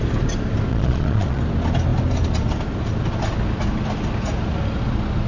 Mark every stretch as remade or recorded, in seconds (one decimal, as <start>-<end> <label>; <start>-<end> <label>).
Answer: 0.0-0.7 recorded; 0.7-1.4 remade; 1.4-5.3 recorded